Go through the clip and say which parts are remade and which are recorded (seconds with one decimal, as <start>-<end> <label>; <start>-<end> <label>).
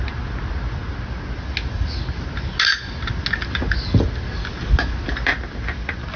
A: 0.0-6.2 recorded